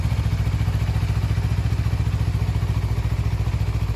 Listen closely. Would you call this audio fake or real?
real